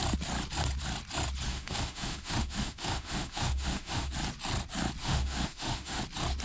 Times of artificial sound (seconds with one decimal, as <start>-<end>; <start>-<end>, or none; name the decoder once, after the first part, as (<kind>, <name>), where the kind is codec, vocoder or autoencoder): 1.5-4.1 (autoencoder, DAC-VAE); 5.0-6.0